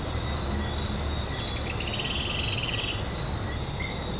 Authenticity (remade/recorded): recorded